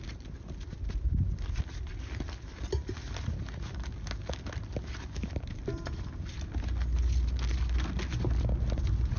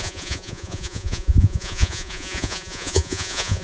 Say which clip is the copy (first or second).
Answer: second